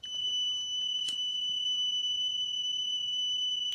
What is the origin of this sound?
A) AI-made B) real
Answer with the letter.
A